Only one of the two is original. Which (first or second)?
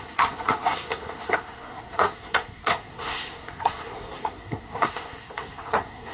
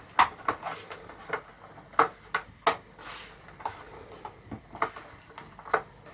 second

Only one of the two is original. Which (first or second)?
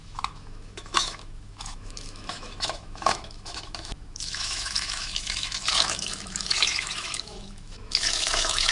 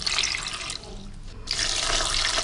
second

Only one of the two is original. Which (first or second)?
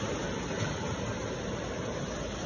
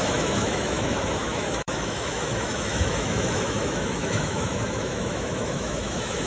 first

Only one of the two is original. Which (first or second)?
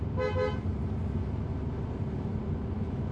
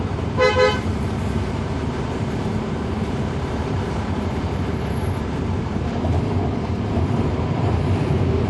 first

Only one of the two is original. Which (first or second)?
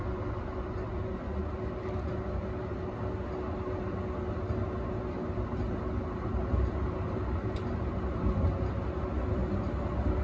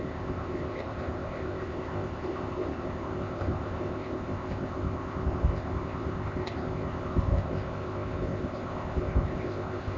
first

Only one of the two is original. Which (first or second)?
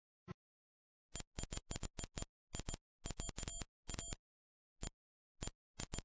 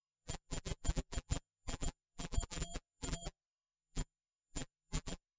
first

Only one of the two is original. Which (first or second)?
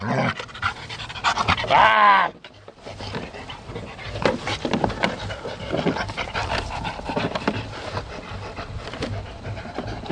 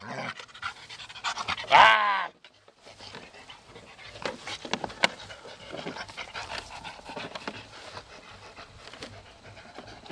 second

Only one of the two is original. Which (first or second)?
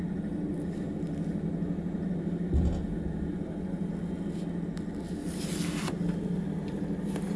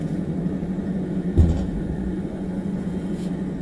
first